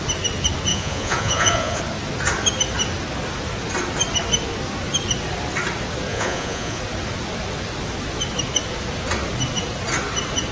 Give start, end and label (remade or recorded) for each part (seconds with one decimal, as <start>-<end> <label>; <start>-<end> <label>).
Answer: 0.0-0.7 recorded; 0.7-1.8 remade; 1.8-6.1 recorded; 6.1-6.8 remade; 6.8-10.5 recorded